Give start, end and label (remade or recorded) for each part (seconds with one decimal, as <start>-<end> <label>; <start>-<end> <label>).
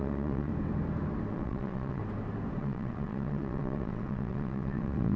0.0-0.5 remade; 0.5-1.3 recorded; 1.3-2.0 remade; 2.0-2.6 recorded; 2.6-5.2 remade